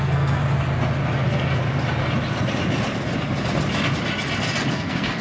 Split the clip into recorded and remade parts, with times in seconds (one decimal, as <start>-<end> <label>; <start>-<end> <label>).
0.0-0.4 remade; 0.4-1.2 recorded; 1.2-1.6 remade; 1.6-4.7 recorded; 4.7-5.2 remade